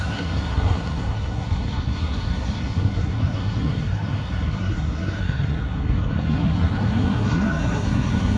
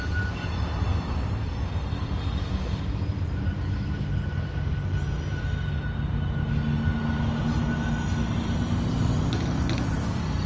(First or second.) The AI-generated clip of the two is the first